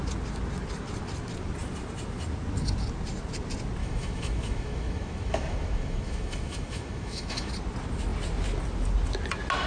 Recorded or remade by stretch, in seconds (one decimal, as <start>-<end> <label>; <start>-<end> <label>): 0.0-3.8 recorded; 3.8-7.5 remade; 7.5-9.7 recorded